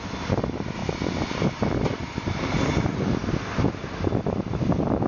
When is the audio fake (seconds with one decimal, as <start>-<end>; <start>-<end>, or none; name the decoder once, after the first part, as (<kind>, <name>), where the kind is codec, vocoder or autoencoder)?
none